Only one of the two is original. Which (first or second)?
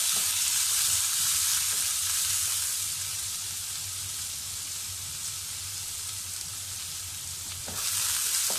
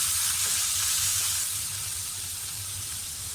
first